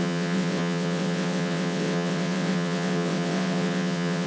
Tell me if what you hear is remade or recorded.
remade